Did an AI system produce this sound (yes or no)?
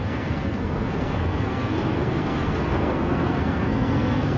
yes